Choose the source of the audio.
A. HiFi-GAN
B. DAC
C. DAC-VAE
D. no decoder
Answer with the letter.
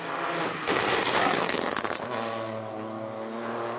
D